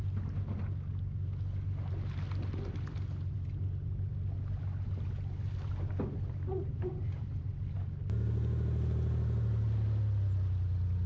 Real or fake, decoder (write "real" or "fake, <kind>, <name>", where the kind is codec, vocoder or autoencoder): real